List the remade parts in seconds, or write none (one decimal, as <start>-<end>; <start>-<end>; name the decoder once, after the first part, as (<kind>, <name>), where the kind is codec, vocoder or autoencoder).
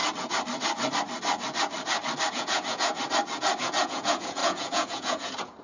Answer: 2.3-2.9 (vocoder, Vocos); 3.6-5.6